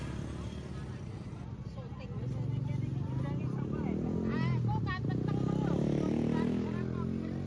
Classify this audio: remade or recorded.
recorded